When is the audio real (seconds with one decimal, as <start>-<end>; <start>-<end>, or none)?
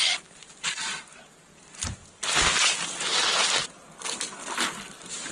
0.0-5.3